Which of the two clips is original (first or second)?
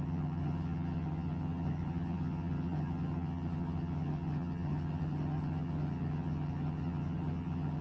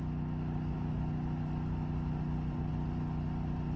second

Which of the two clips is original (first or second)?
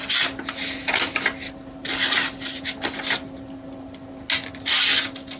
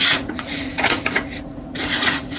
first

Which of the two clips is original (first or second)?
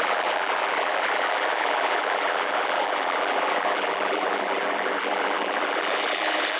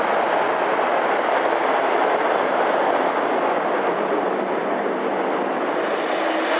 second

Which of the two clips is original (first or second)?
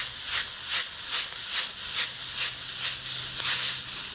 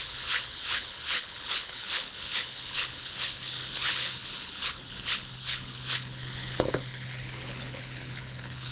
first